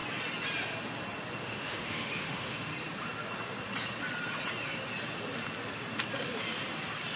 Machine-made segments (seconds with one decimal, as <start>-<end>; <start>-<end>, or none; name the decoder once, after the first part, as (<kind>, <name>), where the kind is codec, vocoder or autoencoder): 1.4-2.7 (autoencoder, DAC-VAE)